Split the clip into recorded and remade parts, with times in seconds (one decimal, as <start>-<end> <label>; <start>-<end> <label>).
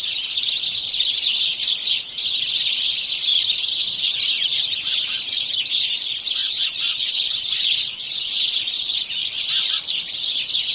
0.0-6.4 recorded; 6.4-8.5 remade; 8.5-9.2 recorded; 9.2-10.0 remade; 10.0-10.7 recorded